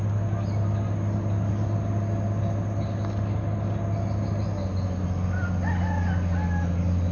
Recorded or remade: recorded